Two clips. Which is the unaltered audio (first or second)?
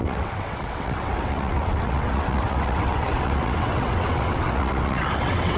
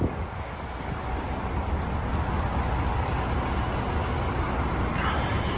second